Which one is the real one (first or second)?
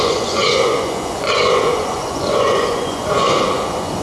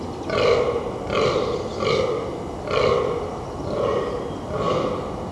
second